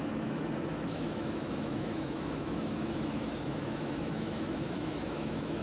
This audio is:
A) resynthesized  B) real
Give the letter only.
A